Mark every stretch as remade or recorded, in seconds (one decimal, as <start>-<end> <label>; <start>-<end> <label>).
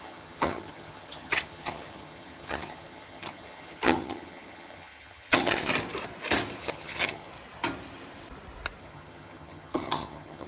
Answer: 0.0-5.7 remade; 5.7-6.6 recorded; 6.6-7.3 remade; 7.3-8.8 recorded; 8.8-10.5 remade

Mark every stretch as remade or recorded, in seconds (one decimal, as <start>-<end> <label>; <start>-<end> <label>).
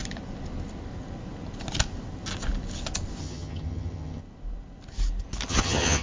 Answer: 0.0-3.2 recorded; 3.2-4.2 remade; 4.2-5.5 recorded; 5.5-6.0 remade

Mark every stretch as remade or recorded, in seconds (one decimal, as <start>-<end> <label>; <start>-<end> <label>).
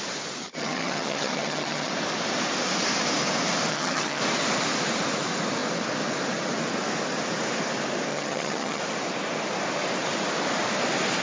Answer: 0.0-0.4 recorded; 0.4-1.9 remade; 1.9-3.7 recorded; 3.7-4.2 remade; 4.2-8.1 recorded; 8.1-8.8 remade; 8.8-11.2 recorded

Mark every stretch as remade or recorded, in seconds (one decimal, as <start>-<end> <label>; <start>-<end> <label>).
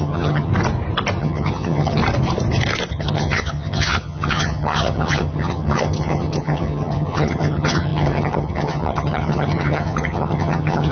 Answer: 0.0-0.5 remade; 0.5-1.2 recorded; 1.2-2.0 remade; 2.0-2.9 recorded; 2.9-10.9 remade